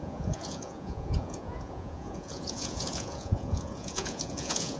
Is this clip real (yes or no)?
no